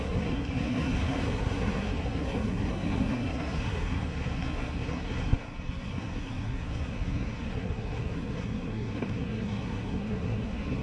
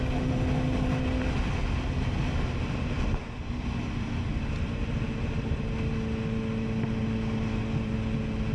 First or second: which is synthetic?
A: first